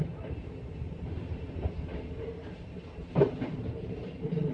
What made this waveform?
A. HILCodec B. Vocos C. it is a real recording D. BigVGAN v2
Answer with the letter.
D